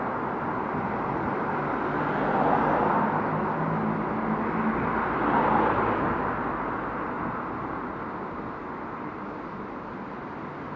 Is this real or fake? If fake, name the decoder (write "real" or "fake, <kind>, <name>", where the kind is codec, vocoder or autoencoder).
real